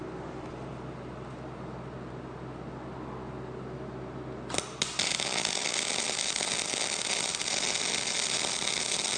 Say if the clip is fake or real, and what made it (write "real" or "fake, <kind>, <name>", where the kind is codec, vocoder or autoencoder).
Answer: real